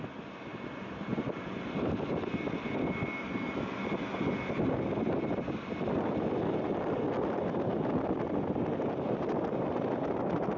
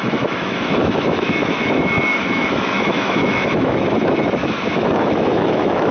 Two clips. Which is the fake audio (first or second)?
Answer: second